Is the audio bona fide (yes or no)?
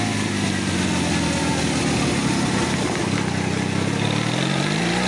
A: yes